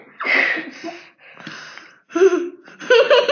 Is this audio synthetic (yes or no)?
no